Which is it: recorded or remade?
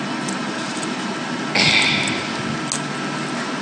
recorded